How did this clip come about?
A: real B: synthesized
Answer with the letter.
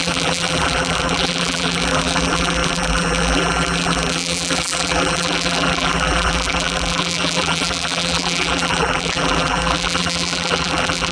B